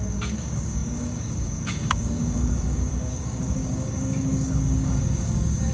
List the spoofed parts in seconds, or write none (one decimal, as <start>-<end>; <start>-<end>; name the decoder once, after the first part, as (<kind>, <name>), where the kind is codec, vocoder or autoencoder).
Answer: 0.0-5.7 (codec, DAC)